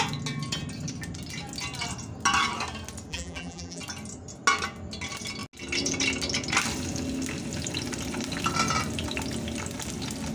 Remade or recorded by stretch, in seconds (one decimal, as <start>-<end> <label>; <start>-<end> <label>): 0.0-3.1 recorded; 3.1-3.8 remade; 3.8-10.3 recorded